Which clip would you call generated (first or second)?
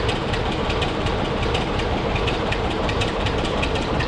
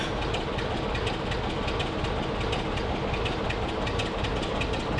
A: first